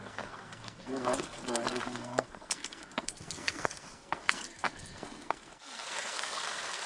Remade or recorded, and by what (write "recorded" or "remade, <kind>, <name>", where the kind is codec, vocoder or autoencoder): remade, codec, SNAC